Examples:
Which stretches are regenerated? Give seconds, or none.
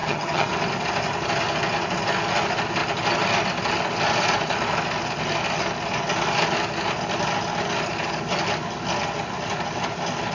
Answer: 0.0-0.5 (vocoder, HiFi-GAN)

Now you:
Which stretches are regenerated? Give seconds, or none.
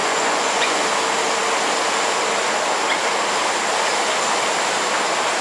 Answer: 0.0-0.8 (vocoder, Vocos)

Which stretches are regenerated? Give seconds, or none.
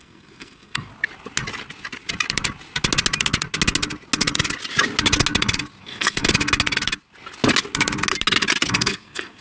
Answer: 0.0-0.9 (codec, SNAC); 5.8-6.3; 8.7-9.4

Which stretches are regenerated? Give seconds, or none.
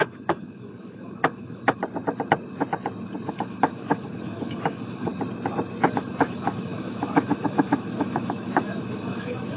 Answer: 0.0-1.8 (autoencoder, DAC-VAE); 3.3-5.1; 5.9-9.6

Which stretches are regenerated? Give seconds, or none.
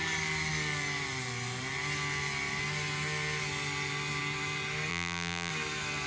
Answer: 4.9-5.5 (vocoder, BigVGAN v2)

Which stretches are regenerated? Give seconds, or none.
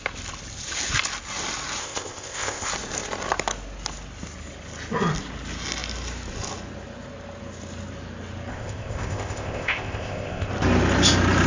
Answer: 1.8-2.7 (codec, ZipCodec); 8.5-10.5